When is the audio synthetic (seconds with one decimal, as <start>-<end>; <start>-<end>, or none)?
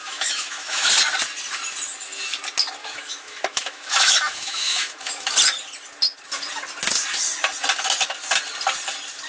0.0-0.9; 2.8-5.3